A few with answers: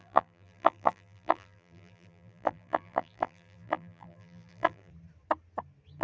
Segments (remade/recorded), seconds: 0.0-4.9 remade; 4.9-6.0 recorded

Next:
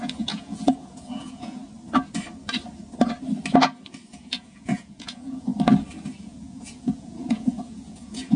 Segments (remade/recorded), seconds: 0.0-1.6 remade; 1.6-4.1 recorded; 4.1-5.5 remade; 5.5-6.2 recorded; 6.2-8.4 remade

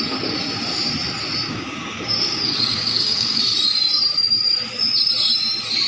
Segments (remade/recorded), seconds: 0.0-1.5 recorded; 1.5-3.4 remade; 3.4-5.9 recorded

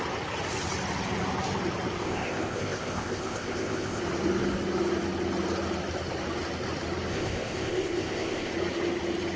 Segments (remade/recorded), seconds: 0.0-2.0 recorded; 2.0-4.0 remade; 4.0-7.1 recorded; 7.1-8.5 remade; 8.5-9.4 recorded

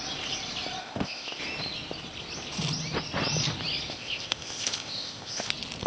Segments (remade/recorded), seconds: 0.0-0.8 recorded; 0.8-1.4 remade; 1.4-3.9 recorded; 3.9-5.5 remade; 5.5-5.9 recorded

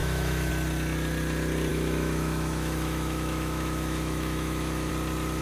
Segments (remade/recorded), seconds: 0.0-0.5 remade; 0.5-1.7 recorded; 1.7-4.9 remade; 4.9-5.4 recorded

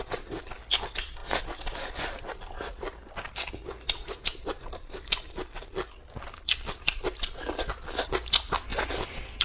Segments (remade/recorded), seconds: 0.0-9.4 recorded

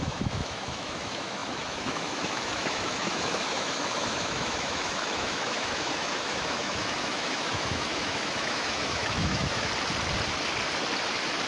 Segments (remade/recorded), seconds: 0.0-9.7 remade; 9.7-11.5 recorded